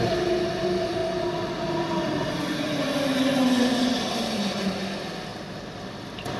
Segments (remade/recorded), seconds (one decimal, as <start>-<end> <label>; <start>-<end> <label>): 0.0-6.4 recorded